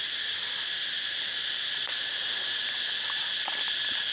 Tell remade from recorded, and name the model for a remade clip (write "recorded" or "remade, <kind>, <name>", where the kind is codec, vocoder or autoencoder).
recorded